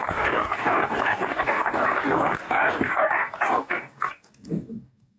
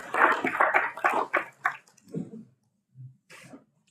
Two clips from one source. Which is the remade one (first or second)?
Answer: first